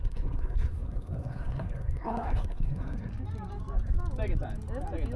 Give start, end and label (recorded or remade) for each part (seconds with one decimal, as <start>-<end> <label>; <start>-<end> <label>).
0.0-3.1 remade; 3.1-5.2 recorded